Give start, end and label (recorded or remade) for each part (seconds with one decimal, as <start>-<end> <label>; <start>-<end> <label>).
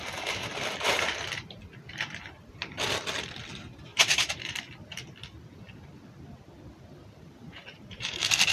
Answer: 0.0-3.9 recorded; 3.9-4.7 remade; 4.7-7.0 recorded; 7.0-8.5 remade